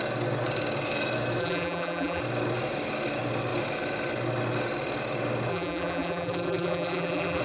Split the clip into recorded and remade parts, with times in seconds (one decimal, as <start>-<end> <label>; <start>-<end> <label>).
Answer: 0.0-1.4 recorded; 1.4-2.2 remade; 2.2-5.5 recorded; 5.5-7.4 remade